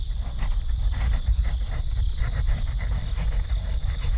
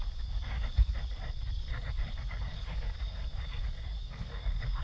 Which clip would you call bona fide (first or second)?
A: first